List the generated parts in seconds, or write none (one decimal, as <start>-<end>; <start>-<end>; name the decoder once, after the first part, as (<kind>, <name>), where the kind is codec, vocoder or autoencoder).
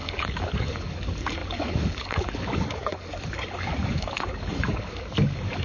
0.0-5.6 (codec, DAC)